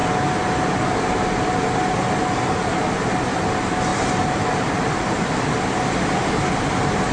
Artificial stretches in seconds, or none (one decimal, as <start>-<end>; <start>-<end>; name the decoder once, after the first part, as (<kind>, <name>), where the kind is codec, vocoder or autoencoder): 3.9-6.4 (vocoder, BigVGAN v2)